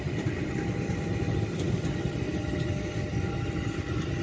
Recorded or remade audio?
recorded